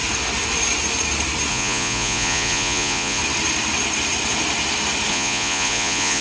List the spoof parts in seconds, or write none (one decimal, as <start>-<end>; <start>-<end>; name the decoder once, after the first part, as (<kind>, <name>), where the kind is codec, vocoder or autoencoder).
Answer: 1.5-3.2 (vocoder, Vocos); 5.1-6.2